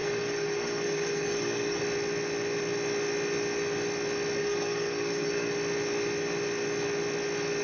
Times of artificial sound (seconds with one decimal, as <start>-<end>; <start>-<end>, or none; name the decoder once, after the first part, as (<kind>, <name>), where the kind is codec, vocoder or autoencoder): 0.0-1.8 (codec, SNAC); 4.4-5.5